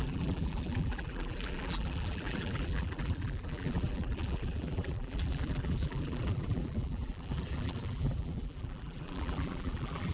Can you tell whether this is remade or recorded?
remade